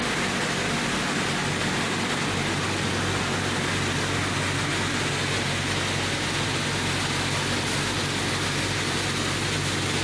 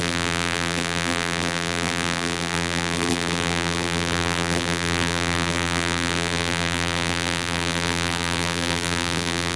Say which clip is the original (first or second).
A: first